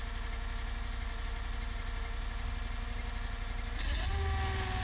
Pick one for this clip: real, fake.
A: real